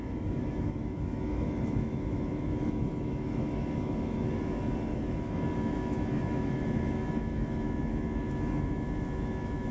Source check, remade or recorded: remade